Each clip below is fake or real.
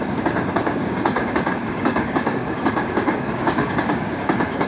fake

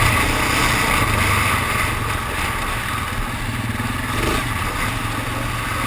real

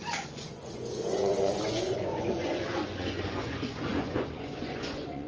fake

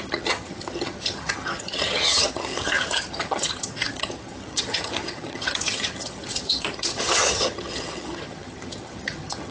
fake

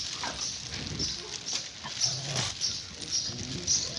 real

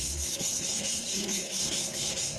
fake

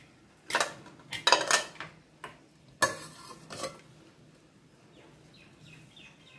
real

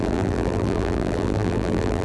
fake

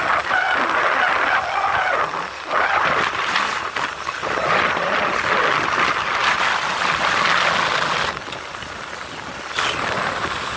real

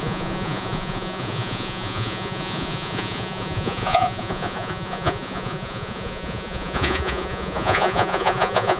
fake